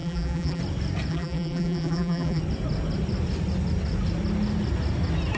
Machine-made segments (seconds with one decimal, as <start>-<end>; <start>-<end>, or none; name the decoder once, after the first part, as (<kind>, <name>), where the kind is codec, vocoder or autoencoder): 0.0-0.6 (vocoder, BigVGAN v2); 1.1-2.4